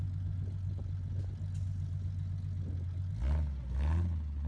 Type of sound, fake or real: real